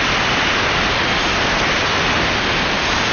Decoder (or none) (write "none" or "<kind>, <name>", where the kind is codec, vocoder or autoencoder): none